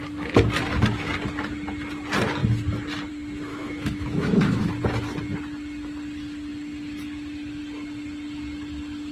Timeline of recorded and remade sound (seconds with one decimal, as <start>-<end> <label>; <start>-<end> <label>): 0.0-3.5 recorded; 3.5-4.7 remade; 4.7-9.1 recorded